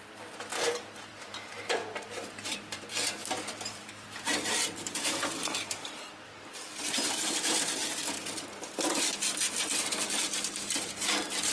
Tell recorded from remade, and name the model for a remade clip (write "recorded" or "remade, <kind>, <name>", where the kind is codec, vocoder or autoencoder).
remade, vocoder, BigVGAN v2